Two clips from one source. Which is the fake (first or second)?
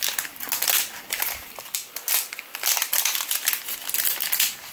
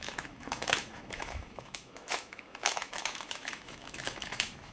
second